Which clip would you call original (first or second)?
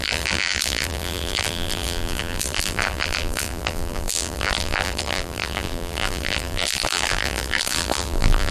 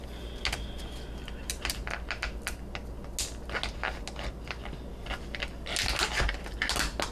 second